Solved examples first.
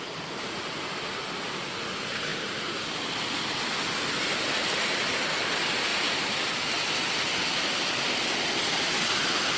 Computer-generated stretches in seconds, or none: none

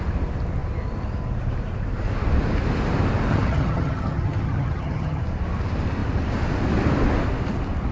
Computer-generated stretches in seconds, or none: 3.3-5.2

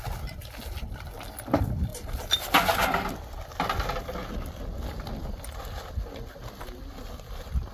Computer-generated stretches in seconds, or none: none